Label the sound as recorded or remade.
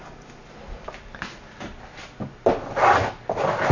recorded